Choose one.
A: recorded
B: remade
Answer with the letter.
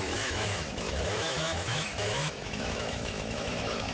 B